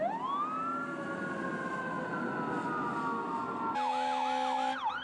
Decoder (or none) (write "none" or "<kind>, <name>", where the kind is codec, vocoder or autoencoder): none